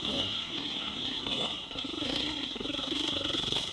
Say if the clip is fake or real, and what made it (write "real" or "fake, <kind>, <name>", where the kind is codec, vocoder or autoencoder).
fake, codec, SNAC